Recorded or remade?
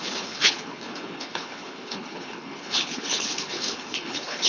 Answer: remade